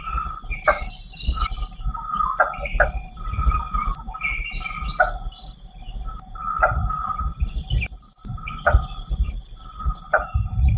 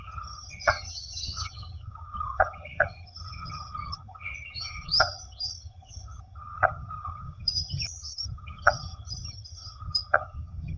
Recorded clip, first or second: first